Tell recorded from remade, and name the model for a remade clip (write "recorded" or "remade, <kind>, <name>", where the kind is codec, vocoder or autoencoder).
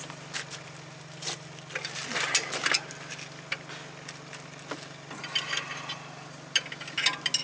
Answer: recorded